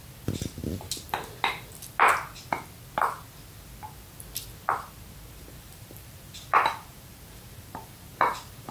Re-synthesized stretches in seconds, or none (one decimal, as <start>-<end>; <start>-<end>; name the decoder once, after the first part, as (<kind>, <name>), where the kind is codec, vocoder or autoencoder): 0.0-0.6 (vocoder, BigVGAN v2); 5.4-8.7